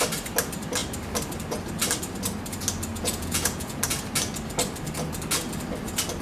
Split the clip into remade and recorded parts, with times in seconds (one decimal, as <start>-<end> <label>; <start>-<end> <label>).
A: 0.0-2.9 recorded; 2.9-3.8 remade; 3.8-6.2 recorded